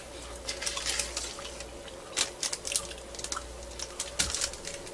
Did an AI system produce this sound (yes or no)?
no